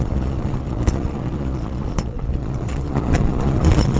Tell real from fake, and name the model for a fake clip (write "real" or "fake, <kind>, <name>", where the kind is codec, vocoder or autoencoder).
fake, vocoder, Vocos